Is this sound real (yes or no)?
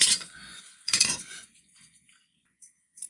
no